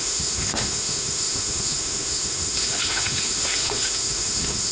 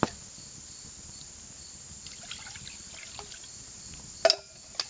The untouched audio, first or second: second